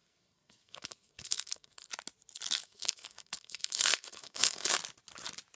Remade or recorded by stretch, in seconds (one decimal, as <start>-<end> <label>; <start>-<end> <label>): 0.0-1.9 remade; 1.9-2.6 recorded; 2.6-4.7 remade; 4.7-5.6 recorded